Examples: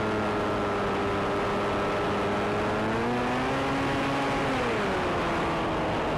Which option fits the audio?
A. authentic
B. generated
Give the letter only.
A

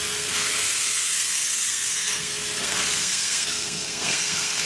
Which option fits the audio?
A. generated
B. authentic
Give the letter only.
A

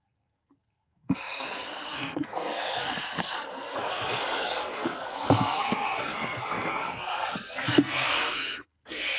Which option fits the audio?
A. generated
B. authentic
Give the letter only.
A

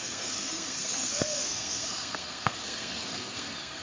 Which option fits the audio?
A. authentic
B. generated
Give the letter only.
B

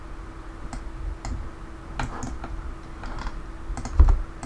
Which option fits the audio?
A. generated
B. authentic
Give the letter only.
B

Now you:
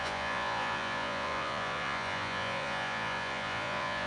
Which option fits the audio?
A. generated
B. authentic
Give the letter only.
A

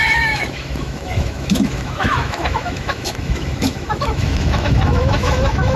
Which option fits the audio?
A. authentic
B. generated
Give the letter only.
B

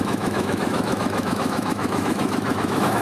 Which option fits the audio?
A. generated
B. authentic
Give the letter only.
A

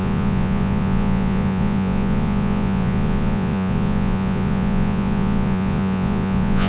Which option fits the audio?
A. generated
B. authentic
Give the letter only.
A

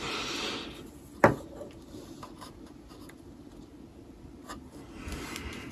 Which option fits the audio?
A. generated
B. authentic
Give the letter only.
B